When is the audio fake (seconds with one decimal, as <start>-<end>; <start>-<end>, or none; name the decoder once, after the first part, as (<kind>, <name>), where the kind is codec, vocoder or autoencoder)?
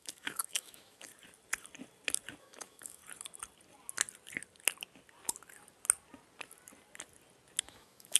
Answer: 0.0-1.1 (autoencoder, DAC-VAE); 2.4-3.0; 7.6-8.2